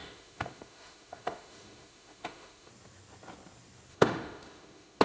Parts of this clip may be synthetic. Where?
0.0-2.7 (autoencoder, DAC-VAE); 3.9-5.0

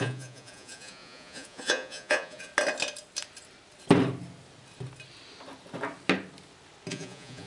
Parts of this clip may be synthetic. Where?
0.0-2.5 (vocoder, Vocos); 6.9-7.5

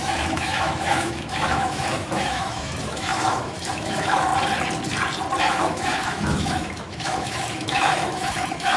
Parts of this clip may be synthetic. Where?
0.0-4.3 (autoencoder, DAC-VAE); 5.4-8.8